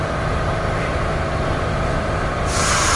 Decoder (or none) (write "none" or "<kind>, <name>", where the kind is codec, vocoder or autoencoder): none